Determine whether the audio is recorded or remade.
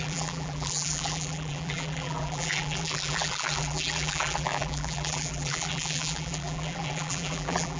remade